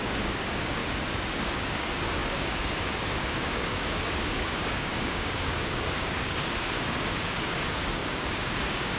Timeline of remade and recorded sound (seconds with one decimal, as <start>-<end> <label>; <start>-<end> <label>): 0.0-0.8 remade; 0.8-1.3 recorded; 1.3-9.0 remade